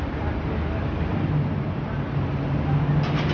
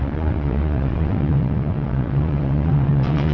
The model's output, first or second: second